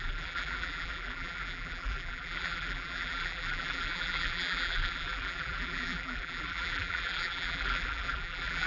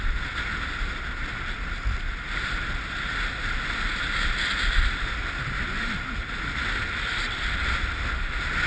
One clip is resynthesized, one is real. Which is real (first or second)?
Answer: second